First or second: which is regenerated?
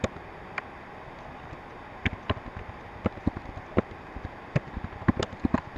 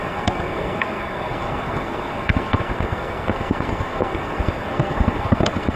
second